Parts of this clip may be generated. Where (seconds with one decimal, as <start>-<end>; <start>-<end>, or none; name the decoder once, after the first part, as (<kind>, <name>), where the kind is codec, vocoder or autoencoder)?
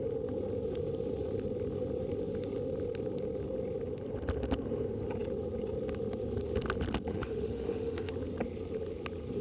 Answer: 7.1-8.1 (autoencoder, DAC-VAE)